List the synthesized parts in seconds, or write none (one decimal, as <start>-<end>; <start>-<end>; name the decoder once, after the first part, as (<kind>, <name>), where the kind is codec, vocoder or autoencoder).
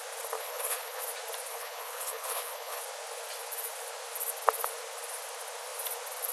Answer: 0.4-1.0 (codec, HILCodec); 1.5-2.8